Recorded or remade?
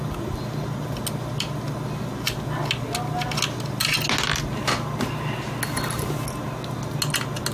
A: recorded